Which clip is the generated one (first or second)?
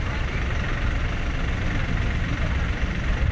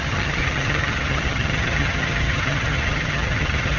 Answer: second